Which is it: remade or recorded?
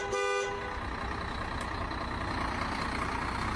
recorded